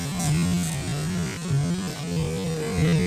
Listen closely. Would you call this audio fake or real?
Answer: real